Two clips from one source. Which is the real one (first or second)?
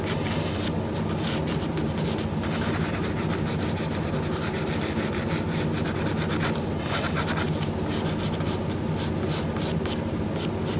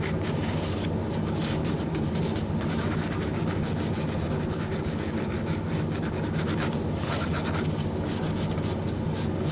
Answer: first